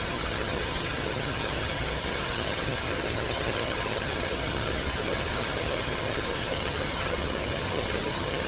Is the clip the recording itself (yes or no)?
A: no